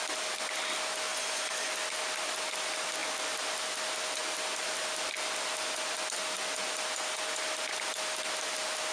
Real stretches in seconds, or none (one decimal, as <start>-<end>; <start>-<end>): 0.0-1.1; 1.7-8.9